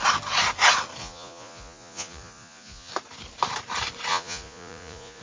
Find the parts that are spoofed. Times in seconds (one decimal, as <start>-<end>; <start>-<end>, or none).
1.0-2.9; 4.1-5.2

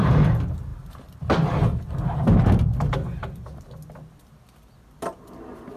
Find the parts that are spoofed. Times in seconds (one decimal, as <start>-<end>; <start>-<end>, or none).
none

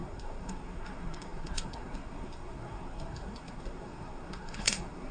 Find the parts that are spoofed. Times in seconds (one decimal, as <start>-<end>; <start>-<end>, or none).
0.0-5.1

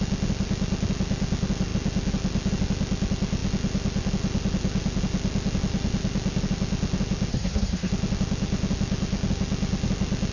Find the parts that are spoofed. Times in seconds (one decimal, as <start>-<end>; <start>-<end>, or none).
7.3-7.9

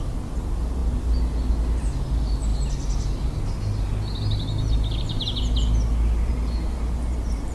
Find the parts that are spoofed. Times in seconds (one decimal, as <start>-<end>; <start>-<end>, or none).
none

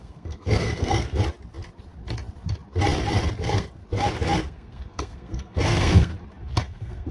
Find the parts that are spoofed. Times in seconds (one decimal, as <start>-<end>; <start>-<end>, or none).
0.0-1.2; 3.4-3.8; 4.4-6.1; 6.6-7.1